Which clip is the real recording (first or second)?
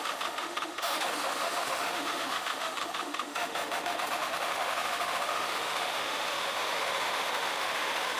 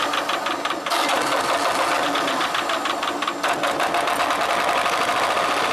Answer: second